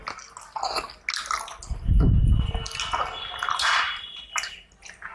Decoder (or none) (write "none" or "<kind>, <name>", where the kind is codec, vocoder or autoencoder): none